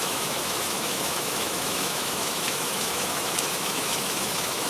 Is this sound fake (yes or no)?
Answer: yes